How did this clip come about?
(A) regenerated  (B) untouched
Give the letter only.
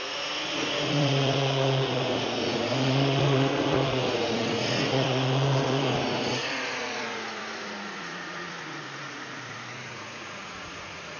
A